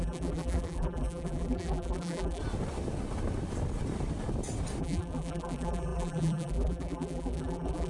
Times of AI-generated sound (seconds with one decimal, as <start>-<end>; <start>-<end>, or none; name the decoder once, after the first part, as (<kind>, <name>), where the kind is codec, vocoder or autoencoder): 0.0-2.4 (vocoder, BigVGAN v2); 4.8-7.9